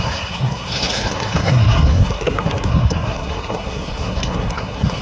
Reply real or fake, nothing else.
fake